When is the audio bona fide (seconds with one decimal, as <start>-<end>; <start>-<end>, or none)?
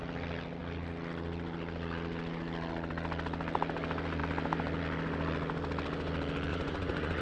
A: 0.0-6.5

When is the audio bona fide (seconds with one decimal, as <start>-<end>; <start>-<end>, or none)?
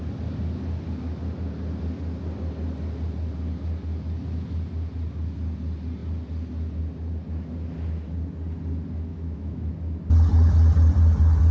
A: 0.0-9.1; 9.7-11.5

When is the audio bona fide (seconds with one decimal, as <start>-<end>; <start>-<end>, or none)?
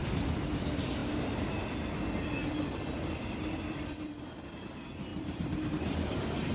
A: 0.0-5.1; 5.7-6.5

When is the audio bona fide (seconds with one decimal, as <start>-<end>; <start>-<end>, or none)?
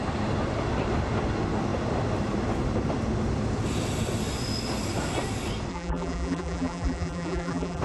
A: 0.0-5.7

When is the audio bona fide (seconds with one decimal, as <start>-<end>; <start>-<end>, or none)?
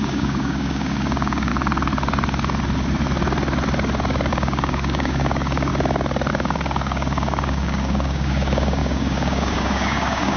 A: 1.5-4.3; 5.7-6.3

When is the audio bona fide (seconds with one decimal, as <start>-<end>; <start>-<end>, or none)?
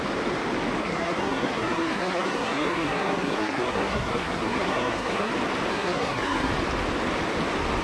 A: 0.0-0.8; 5.3-5.7; 6.5-7.8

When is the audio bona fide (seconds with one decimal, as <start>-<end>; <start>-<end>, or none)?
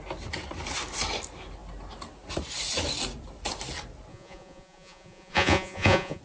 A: 0.0-4.1